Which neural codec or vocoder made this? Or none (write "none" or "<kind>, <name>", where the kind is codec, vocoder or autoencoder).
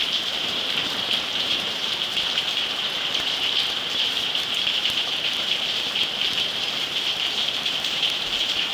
vocoder, BigVGAN v2